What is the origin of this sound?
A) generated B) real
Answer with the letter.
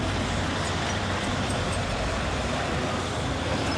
A